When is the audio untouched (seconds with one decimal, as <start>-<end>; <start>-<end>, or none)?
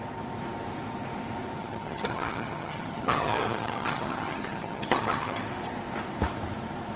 0.0-1.6; 5.4-7.0